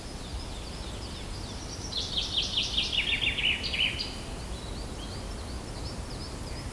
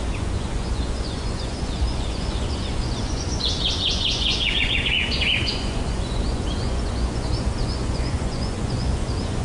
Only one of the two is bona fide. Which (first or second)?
first